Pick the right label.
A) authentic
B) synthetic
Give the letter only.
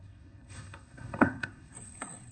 B